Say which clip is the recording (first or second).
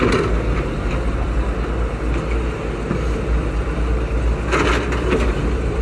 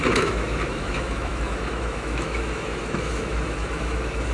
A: first